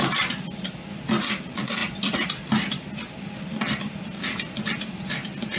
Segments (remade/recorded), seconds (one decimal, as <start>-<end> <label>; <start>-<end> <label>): 0.0-5.6 recorded